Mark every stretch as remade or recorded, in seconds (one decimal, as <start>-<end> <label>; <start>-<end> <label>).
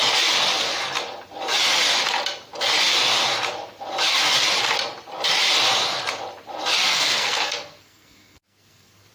0.0-6.9 recorded; 6.9-9.1 remade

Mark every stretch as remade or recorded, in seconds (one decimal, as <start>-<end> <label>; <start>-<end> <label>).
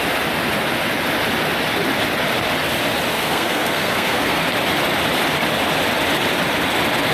0.0-3.1 recorded; 3.1-4.4 remade; 4.4-7.1 recorded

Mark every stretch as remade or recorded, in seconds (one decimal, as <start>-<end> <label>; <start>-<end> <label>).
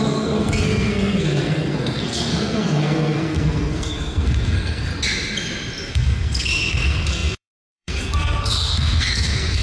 0.0-4.9 remade; 4.9-5.9 recorded; 5.9-9.6 remade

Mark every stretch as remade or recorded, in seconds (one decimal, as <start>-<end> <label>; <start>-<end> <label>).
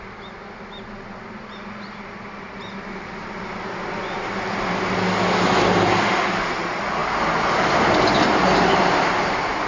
0.0-9.7 recorded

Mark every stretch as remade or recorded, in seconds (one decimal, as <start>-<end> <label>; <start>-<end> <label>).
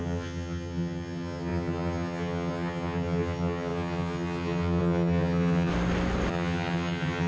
0.0-5.7 remade; 5.7-6.3 recorded; 6.3-7.3 remade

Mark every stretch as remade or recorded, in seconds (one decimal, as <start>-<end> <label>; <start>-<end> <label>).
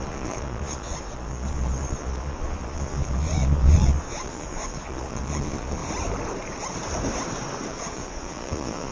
0.0-5.8 remade; 5.8-7.7 recorded; 7.7-8.9 remade